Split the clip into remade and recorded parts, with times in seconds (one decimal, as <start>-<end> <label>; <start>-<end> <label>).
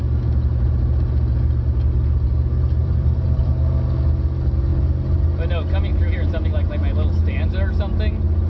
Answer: 0.0-2.8 recorded; 2.8-3.5 remade; 3.5-8.5 recorded